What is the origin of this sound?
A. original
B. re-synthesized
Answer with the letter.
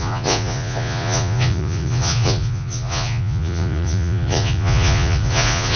B